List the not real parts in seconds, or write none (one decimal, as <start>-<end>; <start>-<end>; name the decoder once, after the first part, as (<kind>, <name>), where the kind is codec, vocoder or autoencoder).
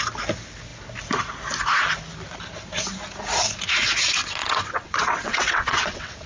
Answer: 4.4-6.3 (vocoder, WaveNeXt)